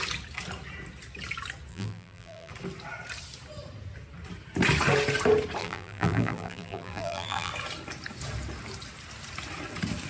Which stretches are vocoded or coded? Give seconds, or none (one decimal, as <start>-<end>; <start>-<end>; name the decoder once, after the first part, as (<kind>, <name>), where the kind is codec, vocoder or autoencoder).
1.7-2.5 (vocoder, BigVGAN v2); 5.6-7.5